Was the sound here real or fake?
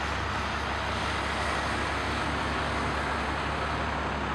real